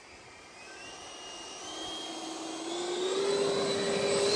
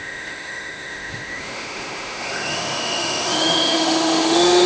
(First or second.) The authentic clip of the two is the first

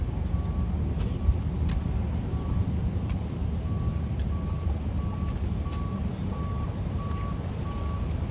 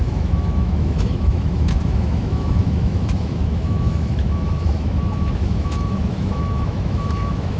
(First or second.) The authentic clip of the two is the first